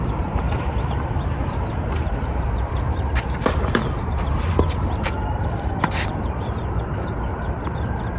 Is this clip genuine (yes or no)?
no